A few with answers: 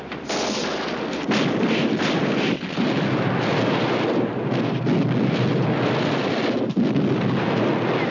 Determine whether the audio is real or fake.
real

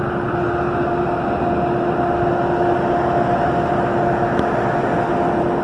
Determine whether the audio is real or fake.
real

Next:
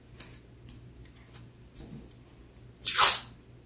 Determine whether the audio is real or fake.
real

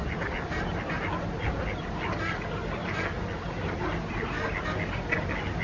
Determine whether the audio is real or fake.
real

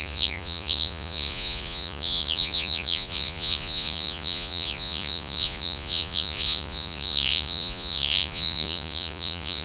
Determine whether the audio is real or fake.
fake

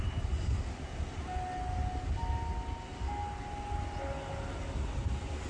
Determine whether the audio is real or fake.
real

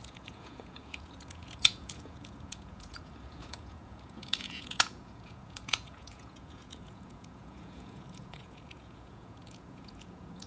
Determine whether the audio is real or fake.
fake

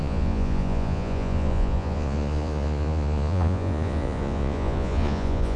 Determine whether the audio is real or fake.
fake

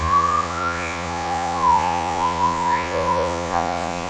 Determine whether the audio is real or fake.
fake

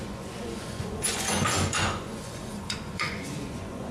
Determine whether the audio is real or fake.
fake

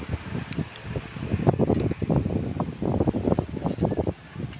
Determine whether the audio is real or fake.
real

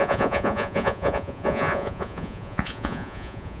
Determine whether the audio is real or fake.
fake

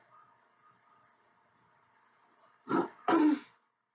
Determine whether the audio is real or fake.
real